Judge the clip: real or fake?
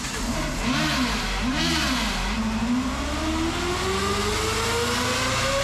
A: real